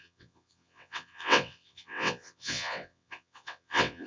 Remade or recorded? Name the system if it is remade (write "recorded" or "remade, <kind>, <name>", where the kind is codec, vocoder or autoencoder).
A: remade, vocoder, WaveNeXt